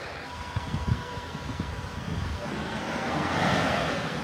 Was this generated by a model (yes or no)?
yes